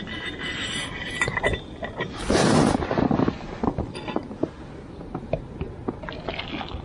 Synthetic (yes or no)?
no